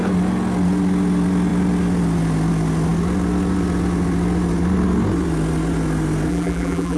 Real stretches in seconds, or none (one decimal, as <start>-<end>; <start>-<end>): 0.0-6.3